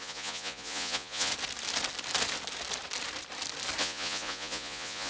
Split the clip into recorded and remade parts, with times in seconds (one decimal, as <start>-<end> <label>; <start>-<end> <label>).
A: 0.0-1.3 remade; 1.3-3.8 recorded; 3.8-5.1 remade